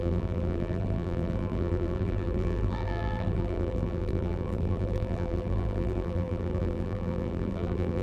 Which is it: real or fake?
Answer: fake